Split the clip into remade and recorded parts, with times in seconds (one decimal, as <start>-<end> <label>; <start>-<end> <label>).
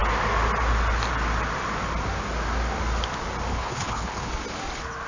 0.0-3.5 recorded; 3.5-4.3 remade; 4.3-5.1 recorded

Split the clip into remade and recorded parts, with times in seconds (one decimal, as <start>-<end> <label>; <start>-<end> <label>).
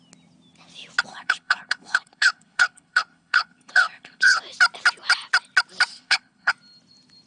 0.0-1.1 recorded; 1.1-4.4 remade; 4.4-5.9 recorded; 5.9-6.5 remade; 6.5-7.3 recorded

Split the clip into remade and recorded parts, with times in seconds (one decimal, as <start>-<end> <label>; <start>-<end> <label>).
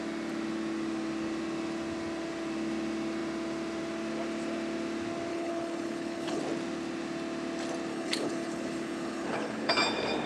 0.0-5.3 recorded; 5.3-6.4 remade; 6.4-7.9 recorded; 7.9-9.7 remade; 9.7-10.3 recorded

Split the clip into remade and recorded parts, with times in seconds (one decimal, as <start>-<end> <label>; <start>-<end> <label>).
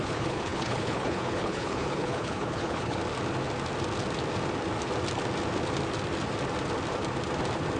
0.0-3.0 remade; 3.0-7.8 recorded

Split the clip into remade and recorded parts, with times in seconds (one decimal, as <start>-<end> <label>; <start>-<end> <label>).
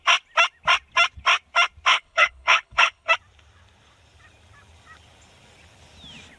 0.0-1.9 recorded; 1.9-3.1 remade; 3.1-6.4 recorded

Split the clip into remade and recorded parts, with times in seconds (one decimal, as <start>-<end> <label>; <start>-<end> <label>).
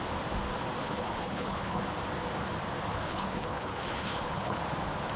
0.0-0.8 recorded; 0.8-1.8 remade; 1.8-2.9 recorded; 2.9-4.6 remade; 4.6-5.2 recorded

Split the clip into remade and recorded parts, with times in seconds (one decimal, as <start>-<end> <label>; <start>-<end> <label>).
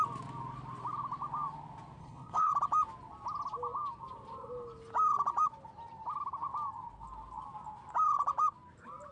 0.0-2.0 recorded; 2.0-2.5 remade; 2.5-9.1 recorded